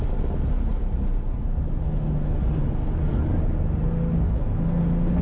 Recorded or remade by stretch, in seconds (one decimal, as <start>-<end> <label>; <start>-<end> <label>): 0.0-5.2 recorded